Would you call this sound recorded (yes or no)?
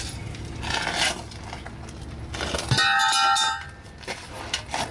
yes